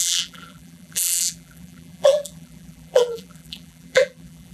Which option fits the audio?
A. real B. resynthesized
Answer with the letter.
B